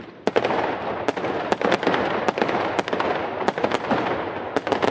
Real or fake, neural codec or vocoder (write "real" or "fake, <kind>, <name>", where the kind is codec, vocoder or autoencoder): real